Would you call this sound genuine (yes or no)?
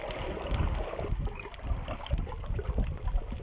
yes